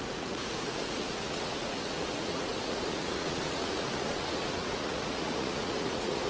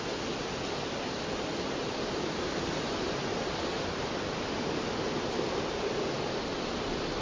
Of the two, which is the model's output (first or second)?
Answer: first